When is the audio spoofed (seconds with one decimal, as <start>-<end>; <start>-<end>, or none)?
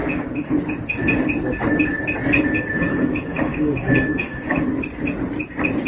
0.0-0.5; 2.9-4.6